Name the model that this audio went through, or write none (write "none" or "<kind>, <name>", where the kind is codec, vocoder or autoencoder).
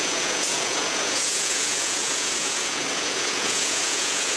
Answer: vocoder, Vocos